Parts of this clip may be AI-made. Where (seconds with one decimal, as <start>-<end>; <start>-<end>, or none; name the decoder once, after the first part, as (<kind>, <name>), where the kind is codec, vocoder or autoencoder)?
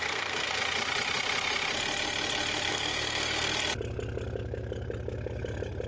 0.0-0.6 (codec, SNAC); 2.7-3.5